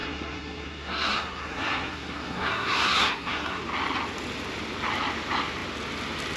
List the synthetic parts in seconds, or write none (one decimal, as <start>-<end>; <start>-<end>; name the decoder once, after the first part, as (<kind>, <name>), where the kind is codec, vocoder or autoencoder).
0.0-3.6 (codec, SNAC)